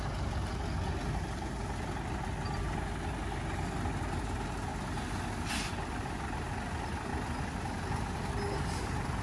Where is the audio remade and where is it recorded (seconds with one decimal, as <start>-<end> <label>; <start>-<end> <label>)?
0.0-9.2 recorded